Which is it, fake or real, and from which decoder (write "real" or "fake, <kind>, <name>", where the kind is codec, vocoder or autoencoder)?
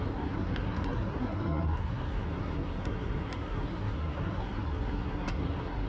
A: fake, codec, SNAC